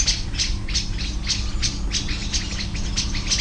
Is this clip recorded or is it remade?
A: recorded